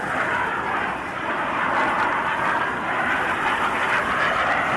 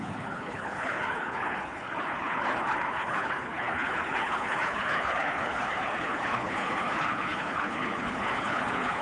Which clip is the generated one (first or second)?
second